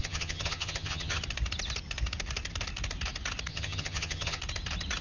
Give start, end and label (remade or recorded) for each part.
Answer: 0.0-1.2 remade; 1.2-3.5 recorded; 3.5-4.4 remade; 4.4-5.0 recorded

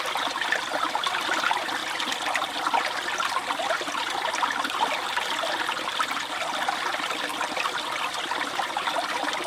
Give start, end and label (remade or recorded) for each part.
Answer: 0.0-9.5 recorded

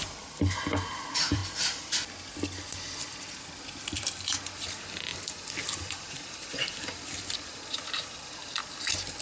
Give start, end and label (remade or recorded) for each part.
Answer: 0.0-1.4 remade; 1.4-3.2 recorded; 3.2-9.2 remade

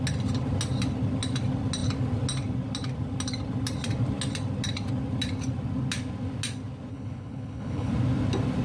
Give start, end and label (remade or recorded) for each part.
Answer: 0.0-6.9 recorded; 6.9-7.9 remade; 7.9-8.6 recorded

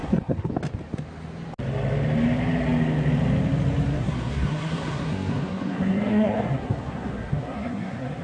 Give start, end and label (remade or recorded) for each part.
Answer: 0.0-0.5 remade; 0.5-3.9 recorded; 3.9-8.2 remade

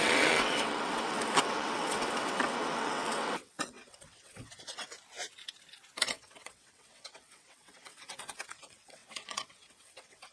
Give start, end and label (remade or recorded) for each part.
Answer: 0.0-4.9 remade; 4.9-6.1 recorded; 6.1-10.3 remade

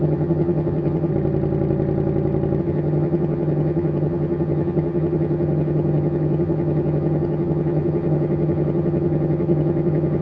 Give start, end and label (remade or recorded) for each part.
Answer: 0.0-1.1 remade; 1.1-2.6 recorded; 2.6-10.2 remade

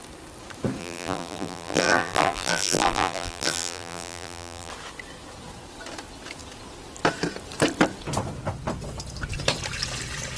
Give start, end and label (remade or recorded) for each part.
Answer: 0.0-0.8 recorded; 0.8-4.7 remade; 4.7-10.4 recorded